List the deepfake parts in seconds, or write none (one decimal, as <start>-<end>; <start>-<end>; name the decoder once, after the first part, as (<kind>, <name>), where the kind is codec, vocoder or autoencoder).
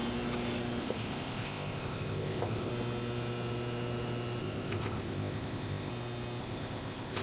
0.8-2.7 (codec, ZipCodec); 4.4-5.9; 6.4-7.2